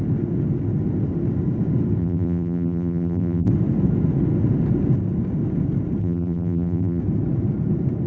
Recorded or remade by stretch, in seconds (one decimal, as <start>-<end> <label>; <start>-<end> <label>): 0.0-2.0 recorded; 2.0-3.5 remade; 3.5-6.0 recorded; 6.0-7.0 remade; 7.0-8.1 recorded